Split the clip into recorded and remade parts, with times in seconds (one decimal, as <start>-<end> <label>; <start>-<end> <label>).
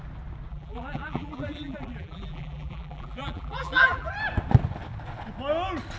0.0-0.5 recorded; 0.5-4.1 remade; 4.1-6.0 recorded